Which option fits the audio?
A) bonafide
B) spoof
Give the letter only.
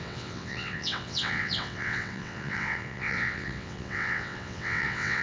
B